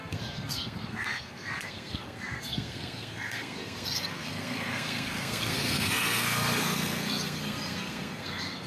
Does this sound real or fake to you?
fake